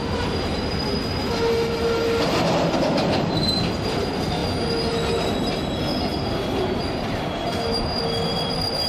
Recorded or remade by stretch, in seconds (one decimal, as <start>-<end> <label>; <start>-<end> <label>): 0.0-8.9 recorded